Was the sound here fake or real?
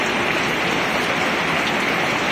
real